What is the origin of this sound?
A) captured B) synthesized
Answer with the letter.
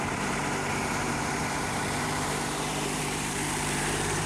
B